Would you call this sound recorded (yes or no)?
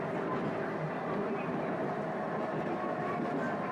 yes